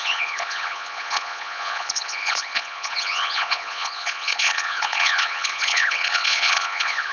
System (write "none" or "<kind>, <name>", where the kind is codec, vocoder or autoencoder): vocoder, Vocos